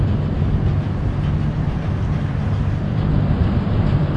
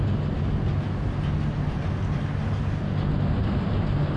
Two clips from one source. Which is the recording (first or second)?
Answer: second